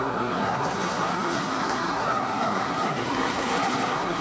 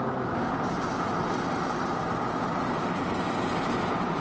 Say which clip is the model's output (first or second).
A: first